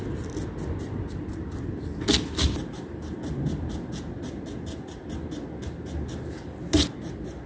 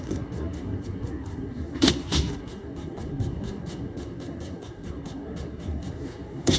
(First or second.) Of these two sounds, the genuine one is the first